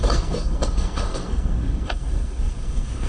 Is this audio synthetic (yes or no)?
yes